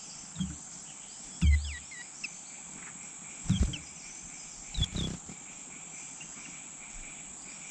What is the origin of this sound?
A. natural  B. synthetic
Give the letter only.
A